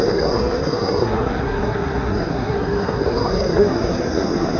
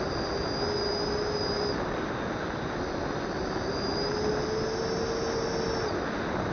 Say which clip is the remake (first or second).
first